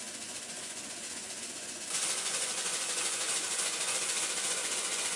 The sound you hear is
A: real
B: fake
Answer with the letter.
B